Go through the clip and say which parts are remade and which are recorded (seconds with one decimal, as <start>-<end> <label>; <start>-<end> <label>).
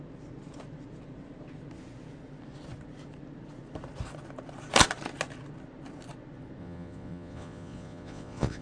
0.0-6.6 recorded; 6.6-8.6 remade